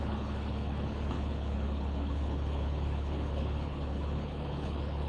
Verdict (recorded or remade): remade